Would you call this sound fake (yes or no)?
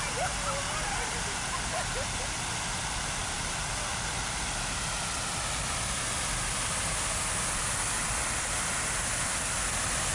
no